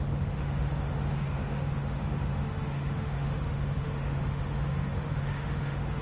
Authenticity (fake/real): fake